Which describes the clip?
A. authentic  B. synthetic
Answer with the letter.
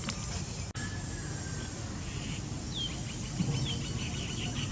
A